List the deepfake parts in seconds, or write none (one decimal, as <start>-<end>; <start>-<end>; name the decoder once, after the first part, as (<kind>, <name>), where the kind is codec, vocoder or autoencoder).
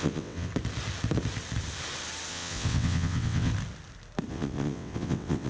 0.0-0.5 (vocoder, WaveNeXt); 2.3-3.5; 4.3-5.5